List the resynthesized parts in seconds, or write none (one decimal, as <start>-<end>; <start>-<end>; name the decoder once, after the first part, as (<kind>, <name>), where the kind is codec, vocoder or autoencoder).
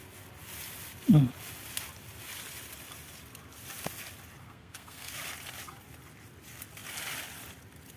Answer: 4.4-5.1 (codec, SNAC)